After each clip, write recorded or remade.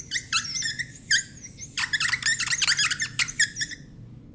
recorded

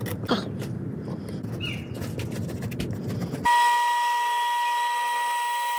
recorded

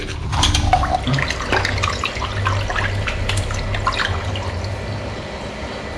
recorded